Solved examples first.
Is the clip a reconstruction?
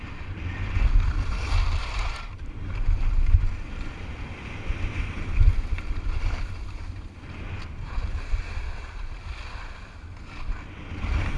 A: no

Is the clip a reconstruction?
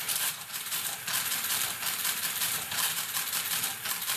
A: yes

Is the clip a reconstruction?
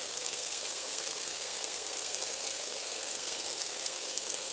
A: yes